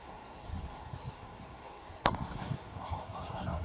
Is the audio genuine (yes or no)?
no